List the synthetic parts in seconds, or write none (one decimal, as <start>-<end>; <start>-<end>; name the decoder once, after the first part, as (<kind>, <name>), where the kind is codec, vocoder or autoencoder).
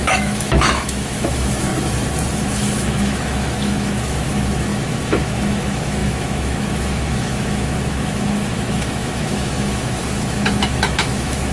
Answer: 0.0-1.7 (autoencoder, DAC-VAE); 2.3-11.5